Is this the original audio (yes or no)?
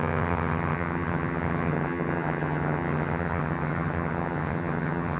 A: no